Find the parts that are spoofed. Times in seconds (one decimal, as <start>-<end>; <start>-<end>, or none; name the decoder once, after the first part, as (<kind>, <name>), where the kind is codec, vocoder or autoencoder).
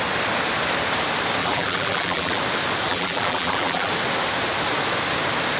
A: 1.4-2.4 (vocoder, BigVGAN v2); 2.9-3.9